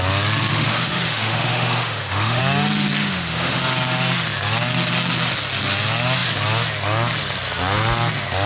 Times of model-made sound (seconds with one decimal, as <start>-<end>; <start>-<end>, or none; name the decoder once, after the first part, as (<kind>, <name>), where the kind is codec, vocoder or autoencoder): 0.5-2.4 (autoencoder, DAC-VAE); 3.0-3.6